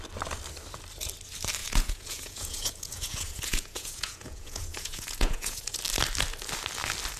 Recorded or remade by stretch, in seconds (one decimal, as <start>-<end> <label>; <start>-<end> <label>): 0.0-1.6 recorded; 1.6-5.8 remade; 5.8-7.2 recorded